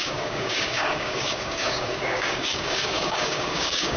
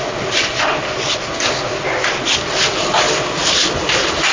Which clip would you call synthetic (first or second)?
first